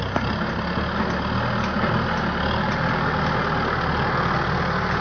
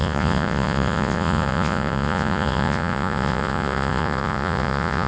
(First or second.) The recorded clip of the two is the first